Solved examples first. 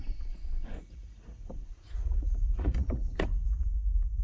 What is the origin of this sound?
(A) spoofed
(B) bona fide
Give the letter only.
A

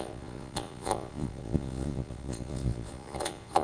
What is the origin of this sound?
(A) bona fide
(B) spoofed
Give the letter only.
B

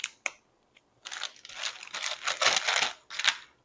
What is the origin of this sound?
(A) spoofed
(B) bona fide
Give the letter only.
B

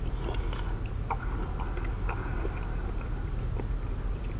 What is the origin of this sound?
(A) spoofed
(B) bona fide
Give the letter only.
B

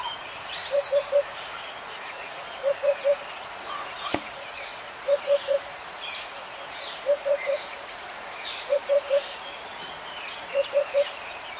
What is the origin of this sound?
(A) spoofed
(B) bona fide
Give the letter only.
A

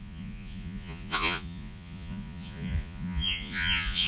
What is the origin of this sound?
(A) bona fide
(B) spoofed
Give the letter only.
B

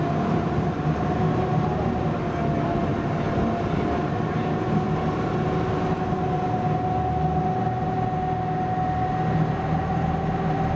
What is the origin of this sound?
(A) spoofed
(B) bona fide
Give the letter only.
B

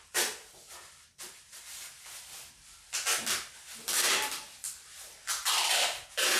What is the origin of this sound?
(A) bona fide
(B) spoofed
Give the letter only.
A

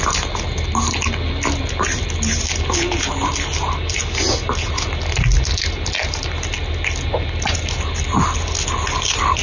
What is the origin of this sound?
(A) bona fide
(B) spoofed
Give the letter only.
A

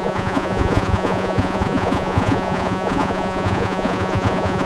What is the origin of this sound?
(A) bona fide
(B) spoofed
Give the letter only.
B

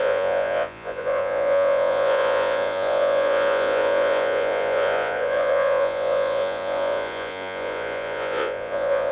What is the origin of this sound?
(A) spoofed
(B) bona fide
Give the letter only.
A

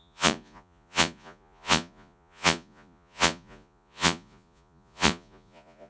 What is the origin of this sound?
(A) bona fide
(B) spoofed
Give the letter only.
B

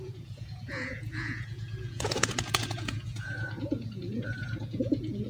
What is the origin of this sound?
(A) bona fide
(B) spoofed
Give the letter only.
B